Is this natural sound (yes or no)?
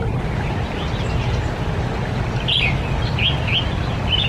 yes